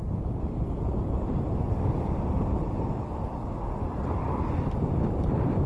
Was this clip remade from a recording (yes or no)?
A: no